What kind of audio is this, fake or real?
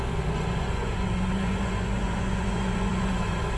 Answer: fake